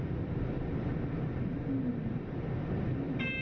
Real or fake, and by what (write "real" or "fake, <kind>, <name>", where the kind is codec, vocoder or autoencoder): real